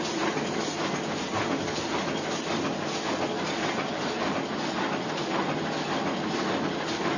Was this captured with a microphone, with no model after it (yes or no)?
yes